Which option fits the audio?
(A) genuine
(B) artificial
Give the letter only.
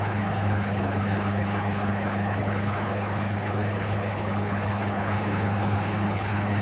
B